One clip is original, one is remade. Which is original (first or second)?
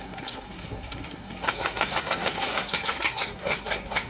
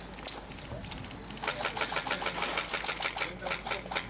second